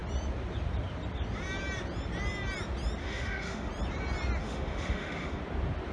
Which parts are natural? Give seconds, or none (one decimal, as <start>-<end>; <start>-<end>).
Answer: 0.0-3.0; 3.7-4.4; 5.4-5.9

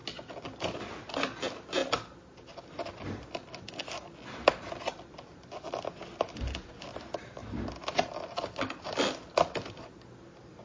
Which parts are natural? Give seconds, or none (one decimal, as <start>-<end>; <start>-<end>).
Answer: 0.0-10.6

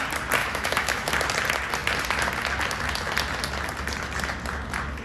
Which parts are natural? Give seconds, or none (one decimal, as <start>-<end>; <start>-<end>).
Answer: 0.0-0.4; 1.1-5.0

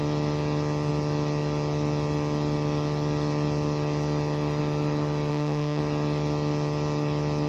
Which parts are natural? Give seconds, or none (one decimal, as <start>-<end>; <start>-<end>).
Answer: 0.0-5.3; 5.8-7.5

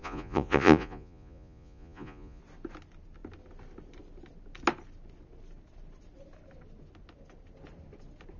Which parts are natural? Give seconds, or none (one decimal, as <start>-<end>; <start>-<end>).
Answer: 2.4-8.4

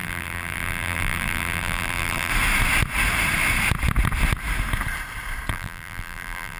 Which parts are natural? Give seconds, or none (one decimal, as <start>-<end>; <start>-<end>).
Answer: 2.3-5.5

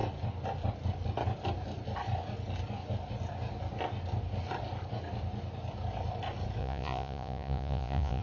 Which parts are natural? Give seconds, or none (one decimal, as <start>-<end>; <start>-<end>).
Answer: 0.0-6.6